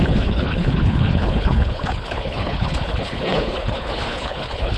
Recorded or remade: remade